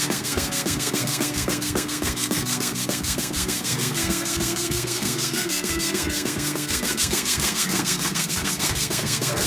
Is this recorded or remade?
remade